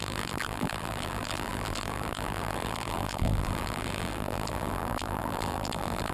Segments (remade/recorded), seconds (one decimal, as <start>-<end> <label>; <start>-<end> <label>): 0.0-6.1 remade